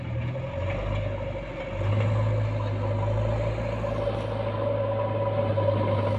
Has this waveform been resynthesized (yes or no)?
no